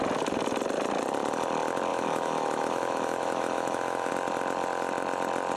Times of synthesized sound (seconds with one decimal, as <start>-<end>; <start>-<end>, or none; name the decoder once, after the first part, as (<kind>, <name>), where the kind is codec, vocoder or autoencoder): 1.9-4.1 (autoencoder, DAC-VAE)